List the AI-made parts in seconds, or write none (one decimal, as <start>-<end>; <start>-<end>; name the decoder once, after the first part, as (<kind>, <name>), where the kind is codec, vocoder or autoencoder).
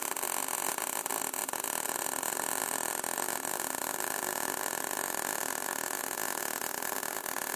none